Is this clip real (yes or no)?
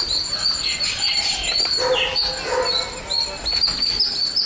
yes